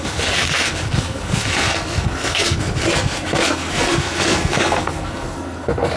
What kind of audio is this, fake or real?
fake